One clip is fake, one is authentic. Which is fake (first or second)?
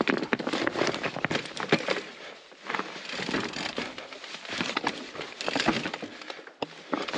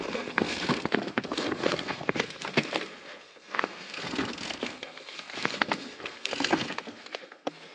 second